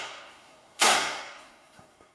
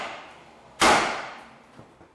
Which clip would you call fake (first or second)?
first